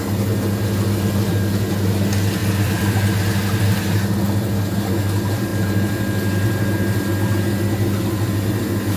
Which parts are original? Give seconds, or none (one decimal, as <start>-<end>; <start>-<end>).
0.0-2.4; 3.2-9.0

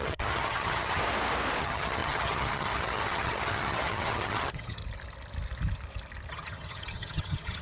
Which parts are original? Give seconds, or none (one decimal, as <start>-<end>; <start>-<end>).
1.0-1.6; 4.8-6.3

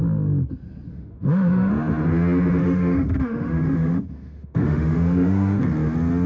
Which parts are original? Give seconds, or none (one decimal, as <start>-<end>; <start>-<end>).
0.0-0.9; 1.7-2.6; 5.6-6.3

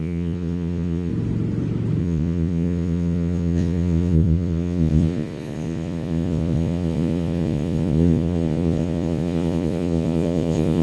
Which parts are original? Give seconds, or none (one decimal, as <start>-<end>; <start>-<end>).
1.1-2.0

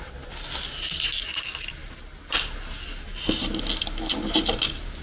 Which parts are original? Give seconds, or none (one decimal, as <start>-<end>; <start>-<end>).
0.0-5.0

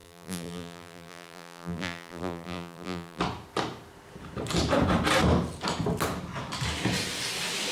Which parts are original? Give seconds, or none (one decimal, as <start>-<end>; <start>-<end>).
3.2-7.7

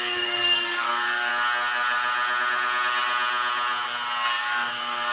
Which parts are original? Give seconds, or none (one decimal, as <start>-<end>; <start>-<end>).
1.3-4.4